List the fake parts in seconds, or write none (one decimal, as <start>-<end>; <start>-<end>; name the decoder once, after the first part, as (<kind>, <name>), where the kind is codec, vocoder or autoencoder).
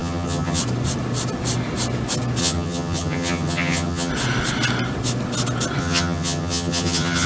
0.0-0.6 (vocoder, HiFi-GAN); 2.4-4.1; 5.8-7.3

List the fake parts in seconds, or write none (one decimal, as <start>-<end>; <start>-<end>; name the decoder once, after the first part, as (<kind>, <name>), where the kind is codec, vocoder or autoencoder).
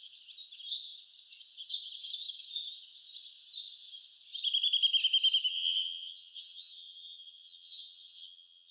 5.5-8.7 (vocoder, HiFi-GAN)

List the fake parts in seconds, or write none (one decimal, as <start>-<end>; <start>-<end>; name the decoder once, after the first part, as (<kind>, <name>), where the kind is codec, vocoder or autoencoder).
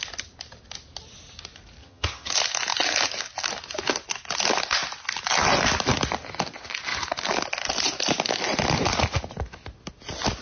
1.8-2.3 (vocoder, HiFi-GAN)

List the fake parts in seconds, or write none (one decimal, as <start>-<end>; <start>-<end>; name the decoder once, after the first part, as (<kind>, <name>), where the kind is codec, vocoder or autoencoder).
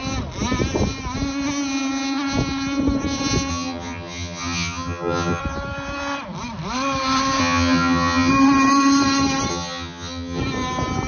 3.5-5.4 (vocoder, HiFi-GAN); 7.4-8.3; 9.5-10.4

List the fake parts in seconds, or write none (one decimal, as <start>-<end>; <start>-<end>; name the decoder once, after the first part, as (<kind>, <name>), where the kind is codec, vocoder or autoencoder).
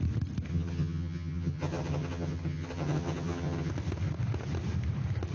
0.5-3.7 (vocoder, HiFi-GAN)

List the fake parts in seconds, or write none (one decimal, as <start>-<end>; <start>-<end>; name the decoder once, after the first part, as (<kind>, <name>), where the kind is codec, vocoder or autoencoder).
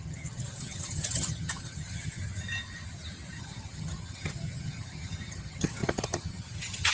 0.0-2.2 (vocoder, HiFi-GAN); 3.4-6.9